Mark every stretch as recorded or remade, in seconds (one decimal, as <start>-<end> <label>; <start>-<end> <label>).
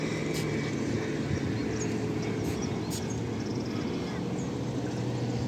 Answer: 0.0-5.5 recorded